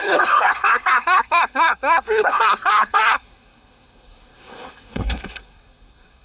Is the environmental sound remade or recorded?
remade